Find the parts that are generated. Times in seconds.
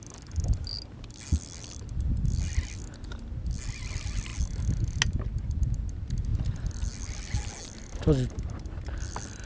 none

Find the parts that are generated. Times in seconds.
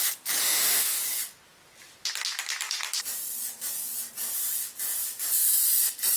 0.4-1.0 (autoencoder, DAC-VAE)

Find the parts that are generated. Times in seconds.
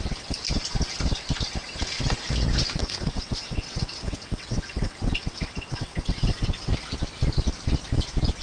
2.8-6.7 (vocoder, WaveNeXt)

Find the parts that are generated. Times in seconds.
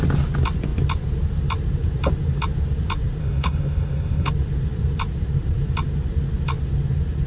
3.2-4.3 (autoencoder, DAC-VAE)